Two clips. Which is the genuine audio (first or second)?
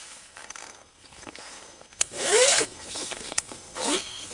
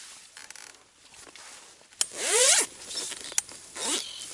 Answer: second